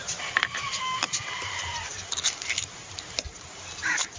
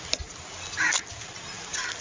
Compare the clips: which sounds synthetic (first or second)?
first